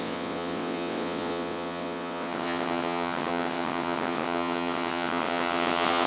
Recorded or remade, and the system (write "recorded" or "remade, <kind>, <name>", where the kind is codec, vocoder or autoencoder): remade, vocoder, WaveNeXt